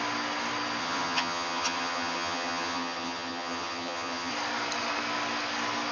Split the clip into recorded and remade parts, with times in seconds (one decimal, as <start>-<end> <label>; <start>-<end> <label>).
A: 0.0-0.8 recorded; 0.8-4.3 remade; 4.3-5.9 recorded